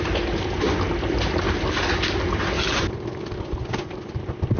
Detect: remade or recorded recorded